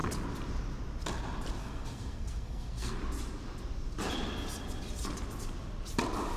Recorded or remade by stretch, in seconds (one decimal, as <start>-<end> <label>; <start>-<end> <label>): 0.0-1.6 recorded; 1.6-3.0 remade; 3.0-6.4 recorded